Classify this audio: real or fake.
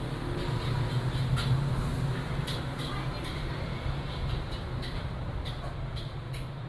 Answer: real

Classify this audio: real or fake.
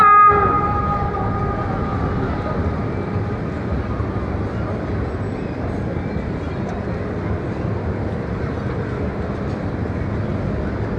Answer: real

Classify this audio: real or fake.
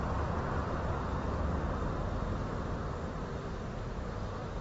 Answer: real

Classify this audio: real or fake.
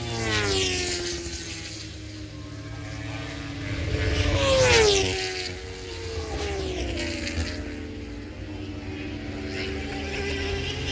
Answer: real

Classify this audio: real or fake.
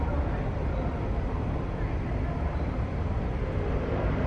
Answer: real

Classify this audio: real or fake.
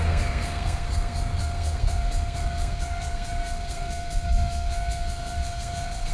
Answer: fake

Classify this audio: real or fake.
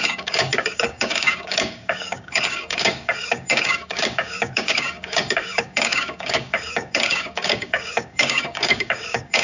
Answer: fake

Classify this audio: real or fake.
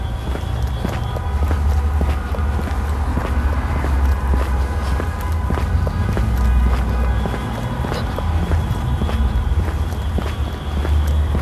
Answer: real